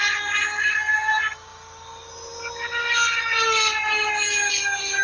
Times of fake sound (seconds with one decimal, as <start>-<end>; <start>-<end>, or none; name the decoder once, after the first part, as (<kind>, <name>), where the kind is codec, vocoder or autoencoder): none